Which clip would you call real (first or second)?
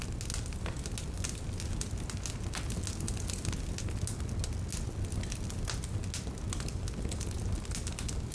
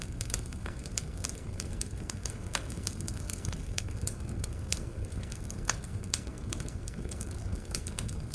first